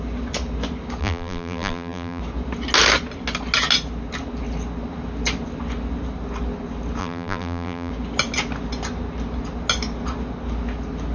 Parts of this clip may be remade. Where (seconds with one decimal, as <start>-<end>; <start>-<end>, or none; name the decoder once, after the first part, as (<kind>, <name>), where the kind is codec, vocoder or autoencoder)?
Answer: 1.0-2.2 (vocoder, BigVGAN v2); 7.0-7.9